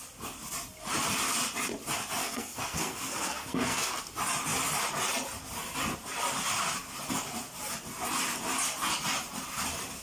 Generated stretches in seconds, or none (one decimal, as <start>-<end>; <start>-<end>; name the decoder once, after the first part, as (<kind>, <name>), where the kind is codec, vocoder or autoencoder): 2.2-4.0 (codec, SNAC)